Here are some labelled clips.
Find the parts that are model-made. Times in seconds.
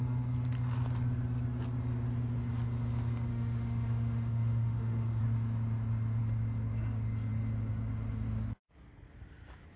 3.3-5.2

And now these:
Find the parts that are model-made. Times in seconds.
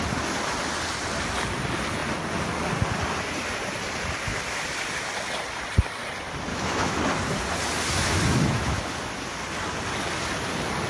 6.5-7.0; 8.0-8.8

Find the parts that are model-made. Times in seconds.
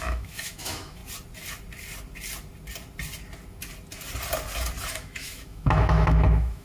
0.0-1.0; 4.9-6.6